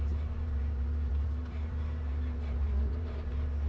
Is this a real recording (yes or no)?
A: no